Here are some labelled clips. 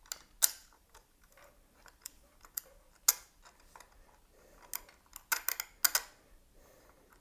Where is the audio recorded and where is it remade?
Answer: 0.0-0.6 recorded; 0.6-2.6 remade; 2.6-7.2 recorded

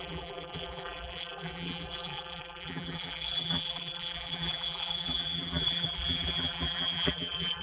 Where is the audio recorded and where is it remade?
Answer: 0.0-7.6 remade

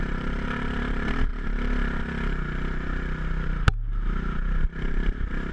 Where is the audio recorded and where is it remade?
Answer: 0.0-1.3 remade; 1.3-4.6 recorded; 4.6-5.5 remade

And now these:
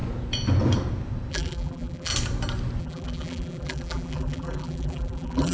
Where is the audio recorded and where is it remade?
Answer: 0.0-1.3 recorded; 1.3-2.1 remade; 2.1-2.8 recorded; 2.8-5.5 remade

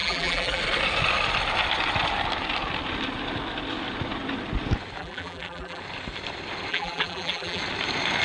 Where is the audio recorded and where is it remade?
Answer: 0.0-0.6 remade; 0.6-5.0 recorded; 5.0-5.8 remade; 5.8-6.7 recorded; 6.7-7.6 remade; 7.6-8.2 recorded

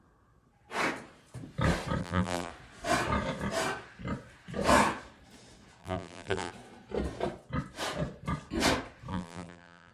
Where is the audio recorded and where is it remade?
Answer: 0.0-2.0 recorded; 2.0-2.5 remade; 2.5-5.8 recorded; 5.8-6.5 remade; 6.5-9.1 recorded; 9.1-9.9 remade